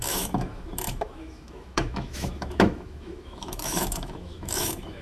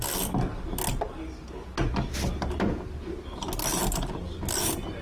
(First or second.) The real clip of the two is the second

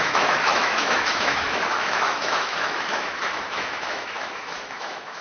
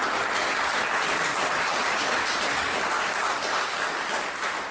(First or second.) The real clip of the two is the second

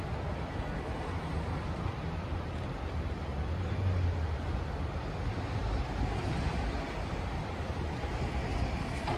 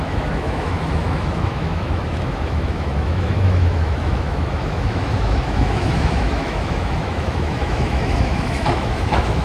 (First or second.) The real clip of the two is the first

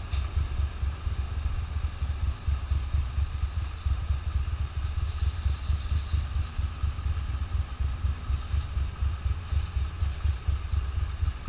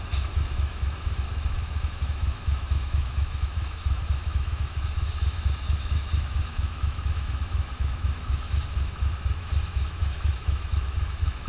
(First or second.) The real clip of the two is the first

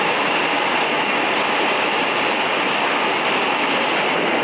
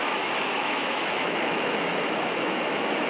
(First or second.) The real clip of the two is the first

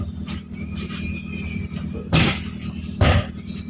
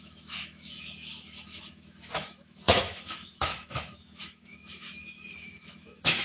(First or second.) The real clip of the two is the first